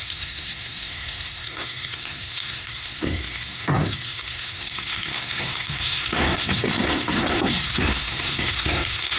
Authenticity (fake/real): fake